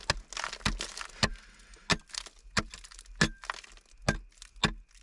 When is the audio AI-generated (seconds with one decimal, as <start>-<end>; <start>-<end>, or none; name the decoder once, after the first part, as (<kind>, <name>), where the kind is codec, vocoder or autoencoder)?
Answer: none

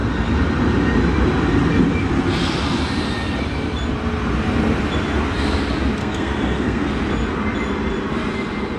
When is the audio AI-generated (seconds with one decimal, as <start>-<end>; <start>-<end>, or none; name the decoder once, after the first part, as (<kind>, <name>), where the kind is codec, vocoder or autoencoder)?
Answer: 6.0-6.9 (codec, SNAC)

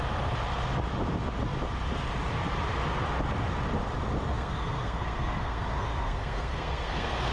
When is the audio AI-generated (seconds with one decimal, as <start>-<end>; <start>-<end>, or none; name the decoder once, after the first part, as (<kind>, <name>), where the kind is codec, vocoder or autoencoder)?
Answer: 4.3-7.3 (codec, SNAC)

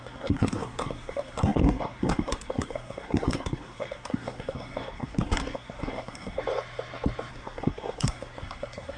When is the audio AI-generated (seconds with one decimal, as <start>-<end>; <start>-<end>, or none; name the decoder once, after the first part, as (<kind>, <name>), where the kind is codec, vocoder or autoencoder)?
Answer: 0.0-6.4 (codec, SNAC); 7.3-9.0

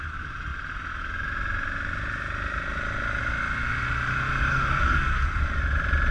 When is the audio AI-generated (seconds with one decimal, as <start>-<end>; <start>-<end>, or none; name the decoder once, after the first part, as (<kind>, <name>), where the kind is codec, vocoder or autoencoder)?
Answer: 4.5-5.3 (codec, SNAC)

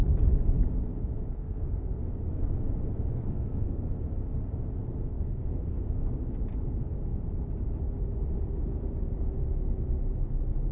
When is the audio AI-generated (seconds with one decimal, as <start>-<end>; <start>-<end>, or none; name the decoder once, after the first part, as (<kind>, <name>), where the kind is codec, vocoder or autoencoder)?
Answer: 1.3-2.0 (codec, SNAC); 3.1-3.9; 5.1-5.9